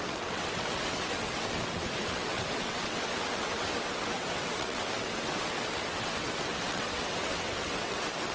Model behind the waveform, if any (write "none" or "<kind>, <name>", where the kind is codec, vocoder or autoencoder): vocoder, WaveNeXt